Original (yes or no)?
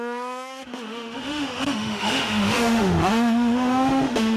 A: no